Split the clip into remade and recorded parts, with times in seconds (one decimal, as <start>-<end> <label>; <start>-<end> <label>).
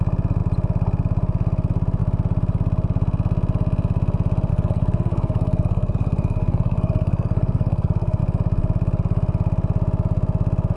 0.0-4.5 recorded; 4.5-8.2 remade; 8.2-10.8 recorded